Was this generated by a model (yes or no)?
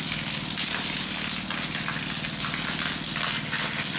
no